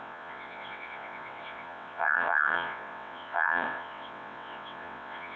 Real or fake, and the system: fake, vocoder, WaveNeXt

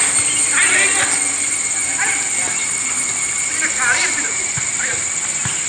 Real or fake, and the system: real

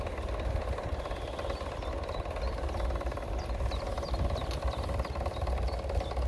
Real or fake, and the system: real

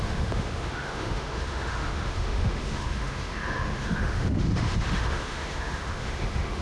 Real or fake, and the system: fake, autoencoder, DAC-VAE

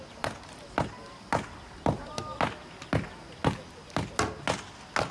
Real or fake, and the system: real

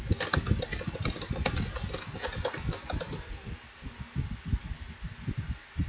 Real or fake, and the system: real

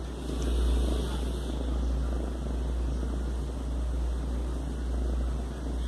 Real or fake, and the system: real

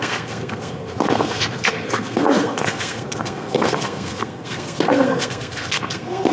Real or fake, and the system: fake, codec, SNAC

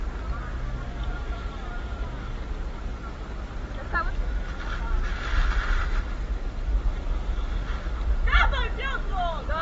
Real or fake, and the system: real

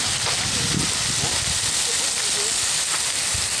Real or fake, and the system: real